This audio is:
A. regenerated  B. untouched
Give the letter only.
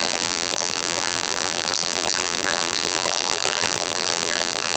A